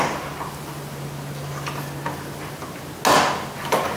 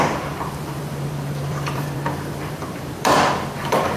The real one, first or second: first